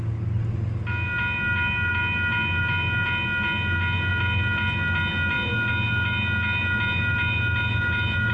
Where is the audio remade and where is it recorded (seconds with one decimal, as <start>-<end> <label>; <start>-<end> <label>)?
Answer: 0.0-8.3 recorded